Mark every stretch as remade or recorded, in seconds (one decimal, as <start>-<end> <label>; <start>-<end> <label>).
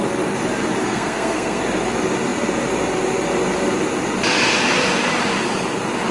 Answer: 0.0-0.8 recorded; 0.8-1.6 remade; 1.6-6.1 recorded